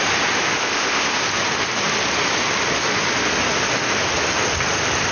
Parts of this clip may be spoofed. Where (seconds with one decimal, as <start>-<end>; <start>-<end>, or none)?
0.6-1.2